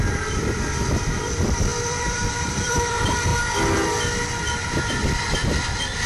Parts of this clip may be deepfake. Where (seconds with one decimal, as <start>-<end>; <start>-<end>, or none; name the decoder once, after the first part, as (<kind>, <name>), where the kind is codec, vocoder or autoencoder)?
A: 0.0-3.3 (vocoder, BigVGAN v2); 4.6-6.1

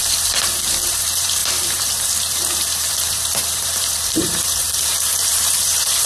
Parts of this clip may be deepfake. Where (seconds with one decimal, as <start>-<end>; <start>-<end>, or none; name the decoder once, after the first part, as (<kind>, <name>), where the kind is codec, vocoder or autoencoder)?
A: 0.0-6.1 (vocoder, BigVGAN v2)

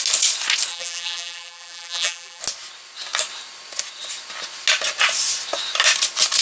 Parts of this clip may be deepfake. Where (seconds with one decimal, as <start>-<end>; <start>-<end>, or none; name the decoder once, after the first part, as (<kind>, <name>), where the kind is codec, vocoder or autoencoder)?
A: 0.7-2.4 (vocoder, BigVGAN v2)

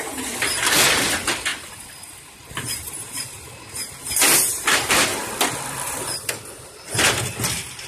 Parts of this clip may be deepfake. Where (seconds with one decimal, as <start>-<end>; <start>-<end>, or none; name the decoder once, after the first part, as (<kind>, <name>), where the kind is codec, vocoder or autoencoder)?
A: 1.5-2.5 (vocoder, BigVGAN v2); 5.1-6.3